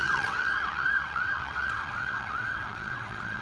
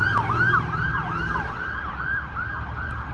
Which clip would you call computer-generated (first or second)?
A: first